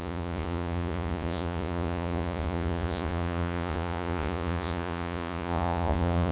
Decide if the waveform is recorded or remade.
remade